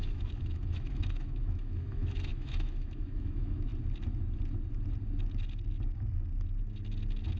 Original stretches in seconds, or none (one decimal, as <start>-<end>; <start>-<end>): 3.7-7.4